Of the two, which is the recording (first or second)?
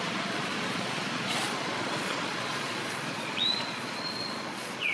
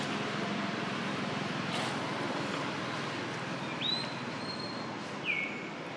second